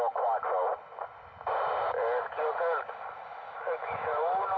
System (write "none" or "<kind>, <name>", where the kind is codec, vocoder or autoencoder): none